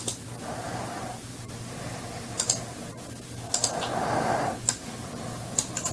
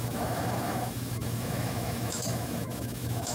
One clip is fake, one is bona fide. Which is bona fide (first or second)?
first